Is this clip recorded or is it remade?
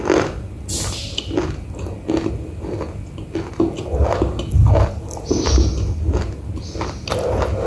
recorded